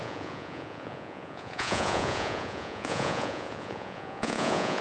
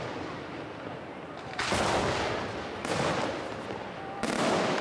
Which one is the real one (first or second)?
second